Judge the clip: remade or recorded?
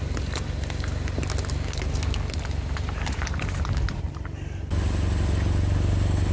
recorded